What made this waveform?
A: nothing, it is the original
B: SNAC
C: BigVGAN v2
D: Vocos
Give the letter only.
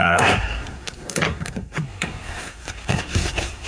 B